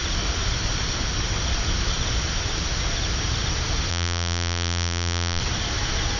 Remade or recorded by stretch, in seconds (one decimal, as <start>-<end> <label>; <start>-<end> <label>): 0.0-3.9 recorded; 3.9-5.4 remade; 5.4-6.2 recorded